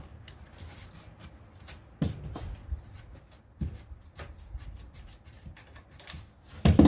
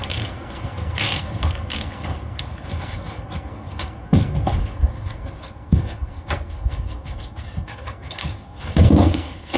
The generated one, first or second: second